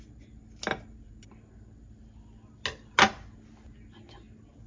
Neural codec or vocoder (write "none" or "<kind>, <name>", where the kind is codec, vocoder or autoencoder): none